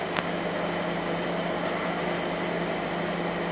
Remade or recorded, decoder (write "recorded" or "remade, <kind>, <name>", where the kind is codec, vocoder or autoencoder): recorded